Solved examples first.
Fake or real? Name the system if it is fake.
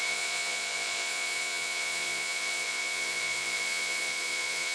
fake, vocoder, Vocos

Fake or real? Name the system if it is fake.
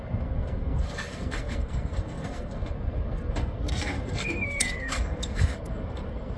fake, codec, SNAC